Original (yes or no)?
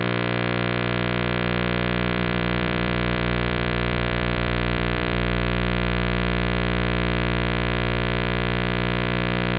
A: no